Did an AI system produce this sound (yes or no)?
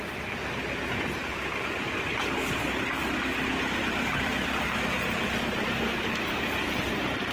no